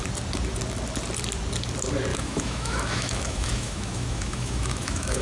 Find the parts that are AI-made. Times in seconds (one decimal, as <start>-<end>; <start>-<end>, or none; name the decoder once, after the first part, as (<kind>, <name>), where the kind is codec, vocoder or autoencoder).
2.1-5.2 (autoencoder, DAC-VAE)